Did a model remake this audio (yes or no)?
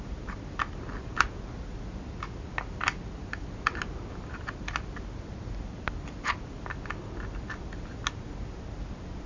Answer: no